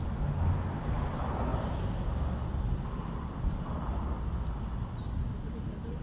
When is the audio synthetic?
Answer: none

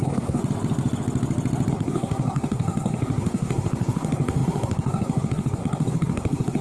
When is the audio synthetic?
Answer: 0.0-0.4 (codec, SNAC); 1.7-6.6